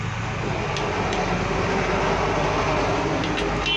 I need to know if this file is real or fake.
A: real